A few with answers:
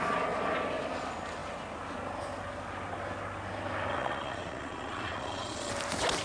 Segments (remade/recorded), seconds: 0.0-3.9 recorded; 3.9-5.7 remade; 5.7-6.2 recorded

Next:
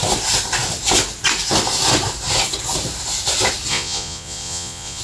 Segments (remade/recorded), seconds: 0.0-3.7 recorded; 3.7-5.0 remade

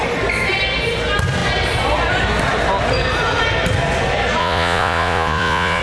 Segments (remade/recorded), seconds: 0.0-4.4 recorded; 4.4-5.8 remade

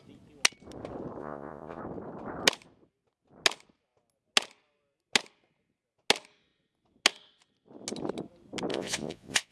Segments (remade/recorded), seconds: 0.0-1.2 recorded; 1.2-1.8 remade; 1.8-8.7 recorded; 8.7-9.5 remade

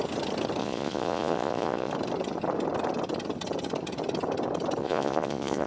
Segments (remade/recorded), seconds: 0.0-0.6 recorded; 0.6-1.9 remade; 1.9-4.8 recorded; 4.8-5.7 remade